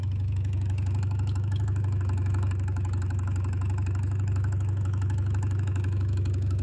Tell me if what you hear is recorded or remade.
remade